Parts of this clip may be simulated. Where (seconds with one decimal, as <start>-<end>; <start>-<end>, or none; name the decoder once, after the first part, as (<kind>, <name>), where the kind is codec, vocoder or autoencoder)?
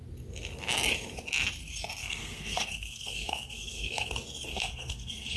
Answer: 2.0-4.1 (codec, SNAC); 4.5-5.4